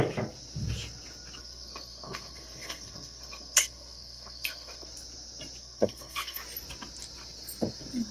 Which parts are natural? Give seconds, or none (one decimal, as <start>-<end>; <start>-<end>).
0.0-1.4; 4.9-5.6; 6.4-8.1